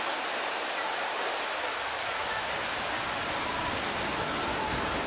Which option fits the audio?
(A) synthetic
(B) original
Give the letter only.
B